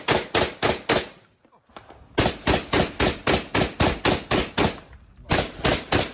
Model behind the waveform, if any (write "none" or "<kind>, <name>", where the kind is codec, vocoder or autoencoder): none